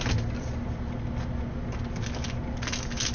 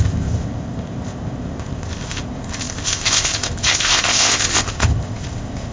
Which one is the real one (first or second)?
first